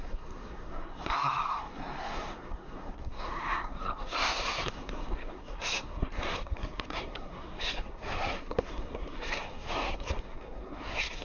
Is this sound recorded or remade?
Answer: remade